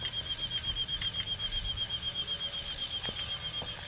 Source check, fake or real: real